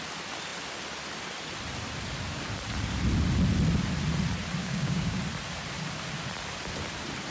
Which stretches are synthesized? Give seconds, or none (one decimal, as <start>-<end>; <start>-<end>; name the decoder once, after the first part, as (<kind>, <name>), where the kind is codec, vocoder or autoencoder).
4.6-5.2 (codec, DAC)